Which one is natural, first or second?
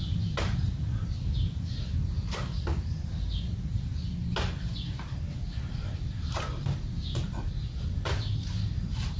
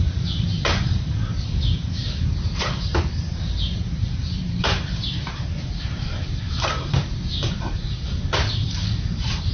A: first